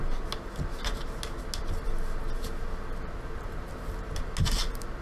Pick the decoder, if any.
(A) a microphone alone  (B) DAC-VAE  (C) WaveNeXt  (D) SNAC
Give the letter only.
A